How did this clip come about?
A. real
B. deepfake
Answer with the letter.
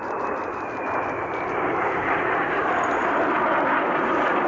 A